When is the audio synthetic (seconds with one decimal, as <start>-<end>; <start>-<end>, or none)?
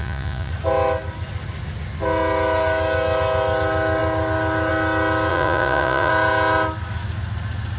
0.0-0.5; 5.3-6.1